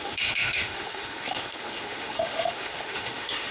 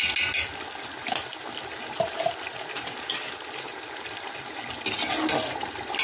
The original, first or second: second